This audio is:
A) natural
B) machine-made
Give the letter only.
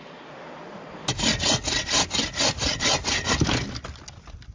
A